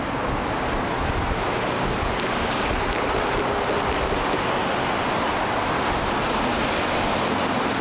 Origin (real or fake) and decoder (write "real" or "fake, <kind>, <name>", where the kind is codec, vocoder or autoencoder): real